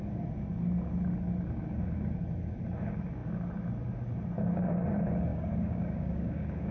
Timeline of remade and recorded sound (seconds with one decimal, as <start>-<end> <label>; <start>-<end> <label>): 0.0-5.3 recorded; 5.3-6.7 remade